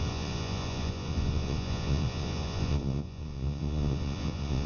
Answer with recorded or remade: remade